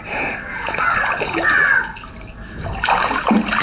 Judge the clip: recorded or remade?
recorded